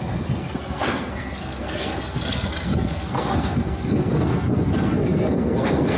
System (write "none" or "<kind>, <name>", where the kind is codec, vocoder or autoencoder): codec, SNAC